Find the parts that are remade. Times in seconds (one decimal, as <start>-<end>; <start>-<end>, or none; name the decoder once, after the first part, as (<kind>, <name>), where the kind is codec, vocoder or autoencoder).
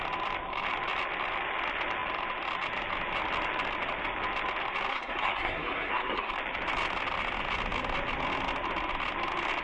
4.9-6.3 (codec, SNAC)